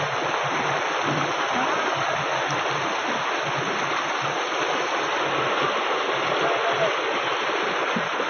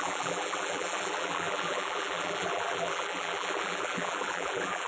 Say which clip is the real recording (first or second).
first